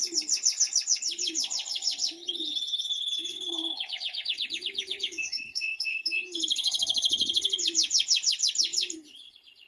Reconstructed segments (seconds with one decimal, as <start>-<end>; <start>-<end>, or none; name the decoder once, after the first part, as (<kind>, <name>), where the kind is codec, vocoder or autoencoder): 0.0-9.7 (codec, HILCodec)